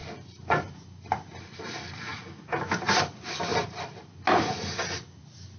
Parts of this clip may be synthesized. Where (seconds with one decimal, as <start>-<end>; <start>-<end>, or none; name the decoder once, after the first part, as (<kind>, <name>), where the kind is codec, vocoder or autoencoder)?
0.0-0.7 (vocoder, BigVGAN v2); 3.5-4.1